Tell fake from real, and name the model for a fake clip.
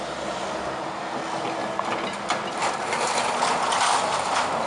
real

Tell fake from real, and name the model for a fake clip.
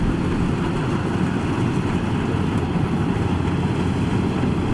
real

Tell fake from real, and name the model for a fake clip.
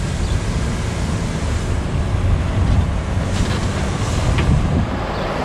real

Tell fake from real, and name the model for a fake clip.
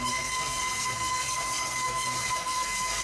fake, codec, SNAC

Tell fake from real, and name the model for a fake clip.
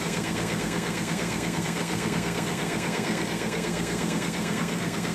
fake, codec, SNAC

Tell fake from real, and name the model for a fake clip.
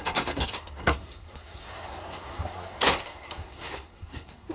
fake, codec, SNAC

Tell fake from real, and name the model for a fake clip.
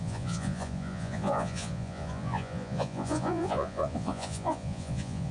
fake, vocoder, Vocos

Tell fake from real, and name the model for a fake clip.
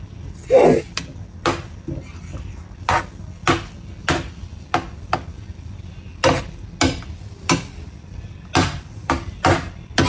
real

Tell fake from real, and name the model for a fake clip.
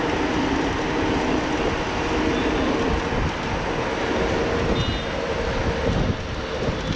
real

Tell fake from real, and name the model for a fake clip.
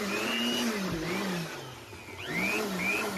real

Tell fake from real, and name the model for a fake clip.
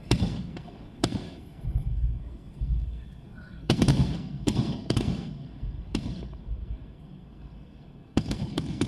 fake, codec, SNAC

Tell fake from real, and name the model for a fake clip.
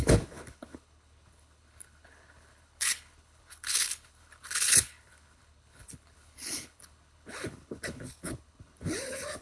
fake, codec, HILCodec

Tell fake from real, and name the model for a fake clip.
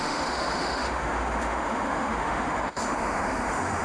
fake, autoencoder, DAC-VAE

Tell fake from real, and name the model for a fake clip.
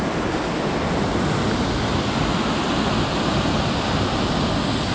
real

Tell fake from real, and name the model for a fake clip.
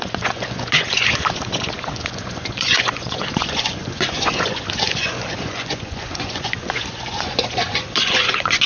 fake, vocoder, Vocos